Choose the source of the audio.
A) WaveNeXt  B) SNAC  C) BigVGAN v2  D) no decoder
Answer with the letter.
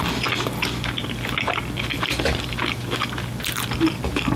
D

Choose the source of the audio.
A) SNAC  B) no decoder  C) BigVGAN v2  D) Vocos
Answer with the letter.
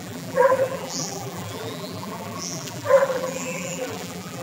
C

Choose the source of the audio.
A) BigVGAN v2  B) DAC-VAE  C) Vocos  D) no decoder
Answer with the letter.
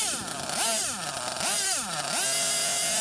D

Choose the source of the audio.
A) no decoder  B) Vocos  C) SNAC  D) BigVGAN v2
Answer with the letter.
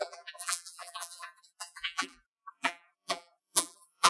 D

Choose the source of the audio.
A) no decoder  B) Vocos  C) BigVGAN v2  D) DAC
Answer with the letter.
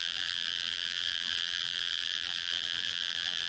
C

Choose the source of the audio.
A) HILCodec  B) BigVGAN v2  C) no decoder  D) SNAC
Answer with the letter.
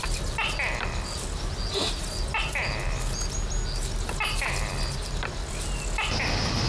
C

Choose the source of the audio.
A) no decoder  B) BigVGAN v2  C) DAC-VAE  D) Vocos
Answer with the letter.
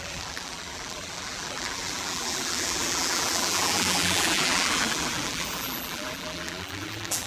B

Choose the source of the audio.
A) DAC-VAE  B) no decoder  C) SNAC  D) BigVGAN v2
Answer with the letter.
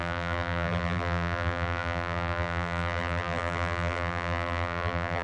D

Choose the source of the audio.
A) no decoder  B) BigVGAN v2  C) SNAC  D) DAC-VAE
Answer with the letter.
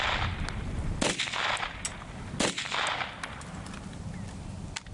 A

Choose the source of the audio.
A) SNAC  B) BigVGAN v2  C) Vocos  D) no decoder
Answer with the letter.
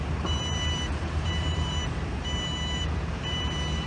B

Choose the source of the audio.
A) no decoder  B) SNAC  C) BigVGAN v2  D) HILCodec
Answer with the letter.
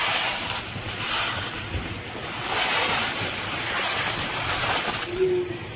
C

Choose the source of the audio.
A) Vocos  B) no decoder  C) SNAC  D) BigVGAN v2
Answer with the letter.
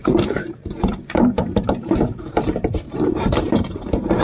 D